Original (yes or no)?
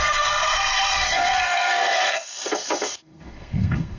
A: no